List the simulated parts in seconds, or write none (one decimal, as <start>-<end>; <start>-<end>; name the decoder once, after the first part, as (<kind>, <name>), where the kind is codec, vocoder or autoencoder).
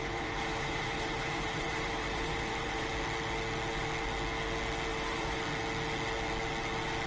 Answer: 0.0-2.9 (vocoder, BigVGAN v2); 4.9-5.4